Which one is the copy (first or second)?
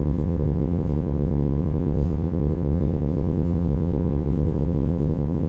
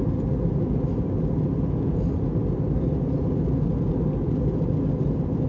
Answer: first